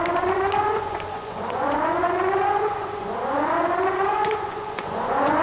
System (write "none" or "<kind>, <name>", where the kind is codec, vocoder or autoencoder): vocoder, Vocos